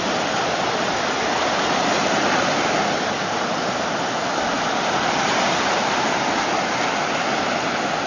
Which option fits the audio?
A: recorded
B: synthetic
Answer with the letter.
A